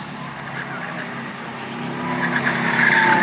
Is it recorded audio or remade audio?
recorded